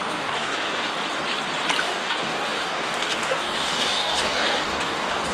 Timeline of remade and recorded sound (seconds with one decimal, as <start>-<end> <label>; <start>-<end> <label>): 0.0-0.9 remade; 0.9-1.8 recorded; 1.8-5.3 remade